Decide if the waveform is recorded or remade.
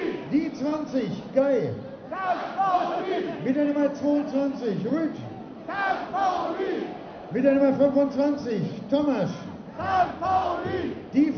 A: recorded